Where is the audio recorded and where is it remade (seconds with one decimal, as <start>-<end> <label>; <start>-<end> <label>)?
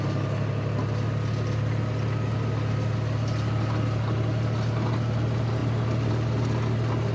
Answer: 0.0-7.1 recorded